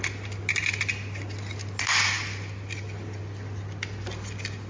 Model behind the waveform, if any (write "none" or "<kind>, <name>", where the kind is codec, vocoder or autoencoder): none